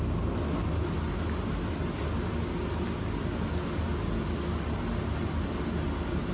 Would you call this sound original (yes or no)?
yes